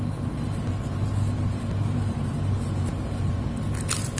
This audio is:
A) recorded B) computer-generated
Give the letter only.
B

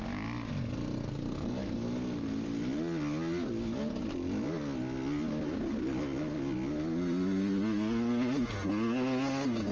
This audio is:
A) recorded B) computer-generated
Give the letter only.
A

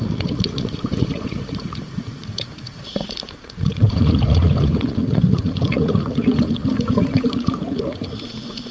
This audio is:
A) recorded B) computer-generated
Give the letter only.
B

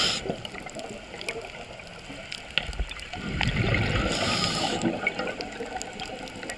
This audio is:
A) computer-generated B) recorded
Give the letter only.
B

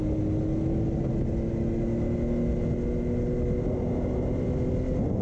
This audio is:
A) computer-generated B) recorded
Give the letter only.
B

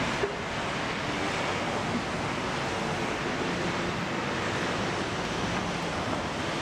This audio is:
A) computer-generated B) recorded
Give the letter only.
B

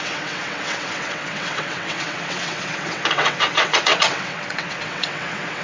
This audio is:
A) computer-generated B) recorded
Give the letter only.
A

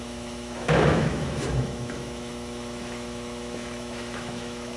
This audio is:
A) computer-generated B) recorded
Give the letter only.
A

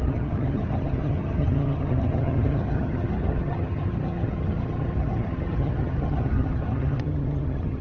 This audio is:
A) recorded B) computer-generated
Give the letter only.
B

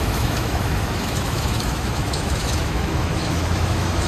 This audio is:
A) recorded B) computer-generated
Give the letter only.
B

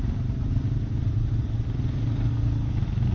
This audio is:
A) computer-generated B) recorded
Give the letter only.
B